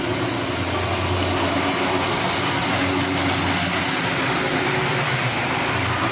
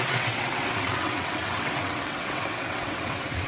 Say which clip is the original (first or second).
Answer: first